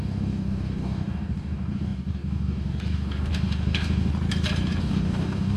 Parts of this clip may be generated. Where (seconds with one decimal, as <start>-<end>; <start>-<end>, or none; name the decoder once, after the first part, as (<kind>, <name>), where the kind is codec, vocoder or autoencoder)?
0.0-4.1 (codec, DAC); 4.8-5.6